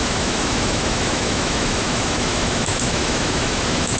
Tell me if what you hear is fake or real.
fake